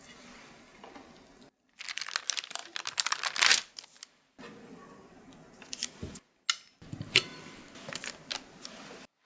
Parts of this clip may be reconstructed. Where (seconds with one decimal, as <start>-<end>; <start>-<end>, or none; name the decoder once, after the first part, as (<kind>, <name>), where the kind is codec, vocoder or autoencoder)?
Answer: none